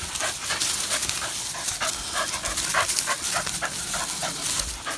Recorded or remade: recorded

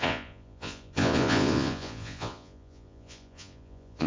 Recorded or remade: remade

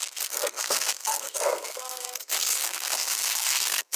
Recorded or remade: remade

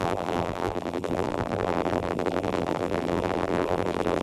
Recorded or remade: remade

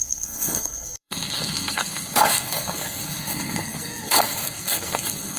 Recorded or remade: remade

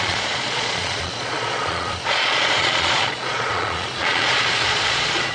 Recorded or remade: remade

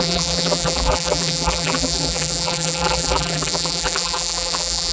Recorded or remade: remade